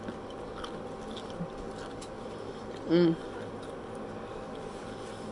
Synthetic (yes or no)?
no